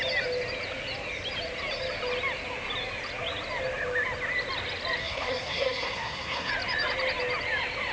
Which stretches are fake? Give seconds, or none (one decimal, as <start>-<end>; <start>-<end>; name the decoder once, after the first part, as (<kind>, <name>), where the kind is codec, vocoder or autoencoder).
5.0-6.5 (codec, SNAC)